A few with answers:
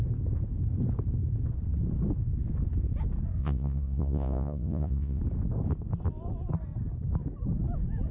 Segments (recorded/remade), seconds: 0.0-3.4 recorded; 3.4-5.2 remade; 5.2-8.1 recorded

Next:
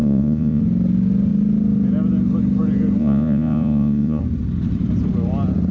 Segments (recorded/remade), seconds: 0.0-0.6 remade; 0.6-3.0 recorded; 3.0-4.2 remade; 4.2-5.7 recorded

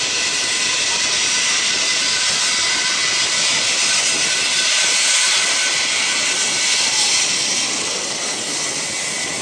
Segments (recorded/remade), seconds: 0.0-9.4 recorded

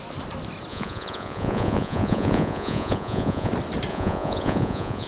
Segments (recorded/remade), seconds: 0.0-0.7 recorded; 0.7-3.5 remade; 3.5-3.9 recorded; 3.9-5.1 remade

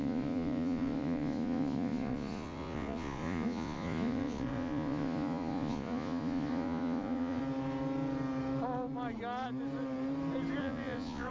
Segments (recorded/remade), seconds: 0.0-7.4 remade; 7.4-10.6 recorded; 10.6-11.3 remade

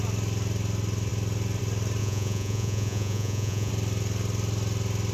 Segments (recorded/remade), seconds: 0.0-2.0 recorded; 2.0-3.7 remade; 3.7-5.1 recorded